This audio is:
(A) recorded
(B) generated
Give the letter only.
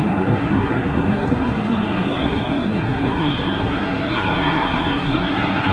B